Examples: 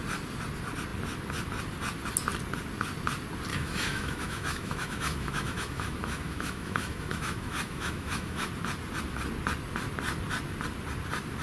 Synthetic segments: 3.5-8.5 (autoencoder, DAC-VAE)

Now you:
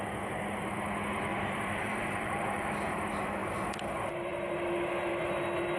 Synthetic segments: 1.3-2.7 (vocoder, BigVGAN v2)

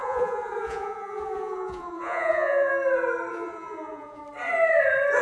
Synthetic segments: 0.0-2.7 (vocoder, Vocos); 3.3-4.2

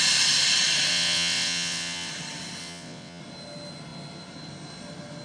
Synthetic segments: 0.9-2.1 (vocoder, WaveNeXt); 2.6-3.2

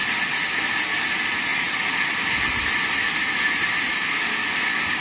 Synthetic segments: none

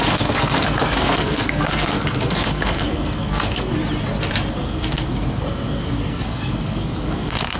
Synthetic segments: 0.0-3.7 (codec, SNAC); 4.5-7.6

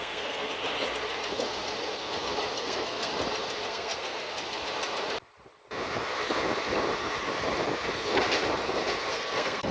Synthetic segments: 0.0-0.5 (codec, SNAC); 2.6-3.1; 3.7-4.3; 9.1-9.7